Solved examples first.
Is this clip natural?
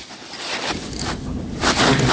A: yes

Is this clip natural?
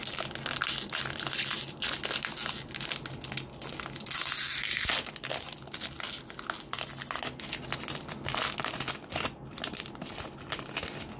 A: yes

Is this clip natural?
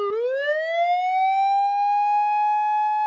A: yes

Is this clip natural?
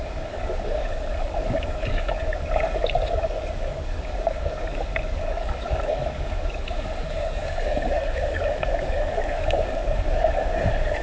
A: no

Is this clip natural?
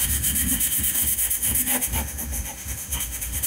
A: no